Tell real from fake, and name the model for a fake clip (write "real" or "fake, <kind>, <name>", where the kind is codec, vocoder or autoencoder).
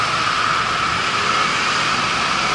real